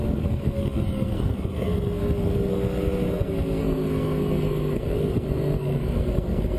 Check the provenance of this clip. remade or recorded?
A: remade